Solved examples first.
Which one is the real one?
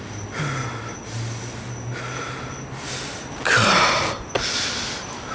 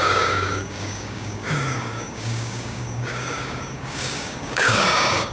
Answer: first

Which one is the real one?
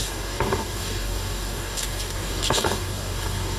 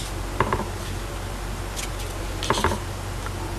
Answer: second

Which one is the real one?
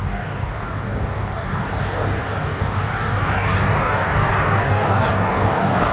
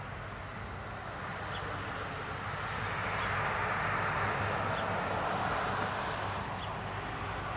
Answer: second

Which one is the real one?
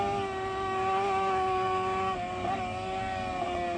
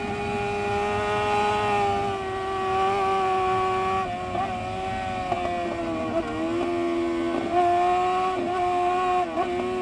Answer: second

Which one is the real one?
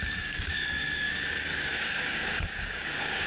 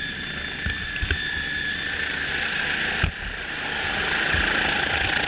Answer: second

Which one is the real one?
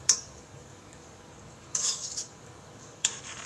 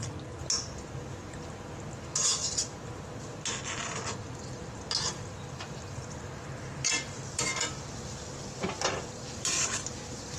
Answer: second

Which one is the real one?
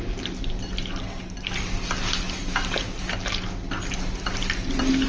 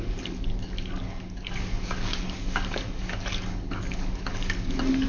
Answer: first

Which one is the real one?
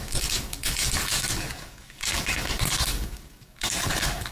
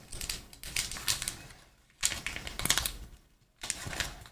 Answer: second